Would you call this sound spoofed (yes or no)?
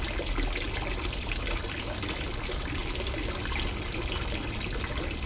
no